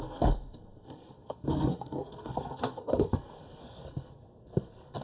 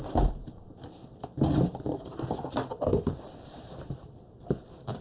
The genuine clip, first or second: second